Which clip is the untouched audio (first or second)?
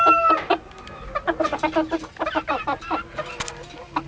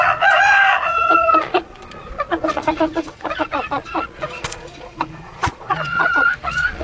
first